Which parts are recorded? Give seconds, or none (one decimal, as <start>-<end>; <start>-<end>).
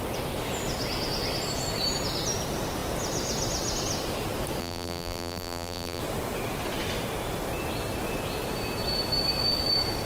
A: 0.0-4.6; 6.0-10.0